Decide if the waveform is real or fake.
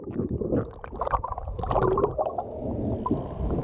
real